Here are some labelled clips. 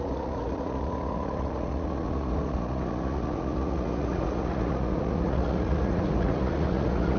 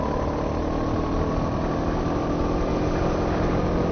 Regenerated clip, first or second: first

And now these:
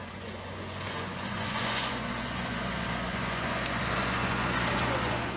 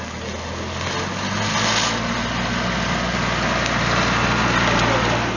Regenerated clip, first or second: first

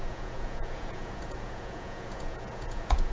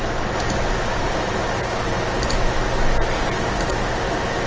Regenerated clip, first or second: first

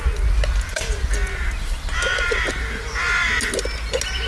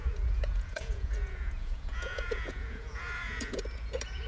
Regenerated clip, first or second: second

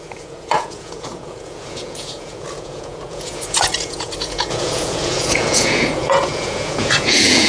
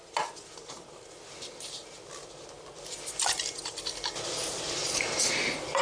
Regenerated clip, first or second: first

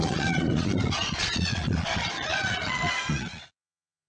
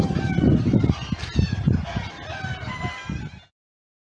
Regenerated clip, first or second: first